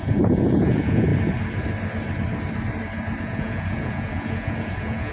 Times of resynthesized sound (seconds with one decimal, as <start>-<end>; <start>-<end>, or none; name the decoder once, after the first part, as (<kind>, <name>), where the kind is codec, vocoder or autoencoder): 0.0-1.1 (vocoder, Vocos); 3.2-5.1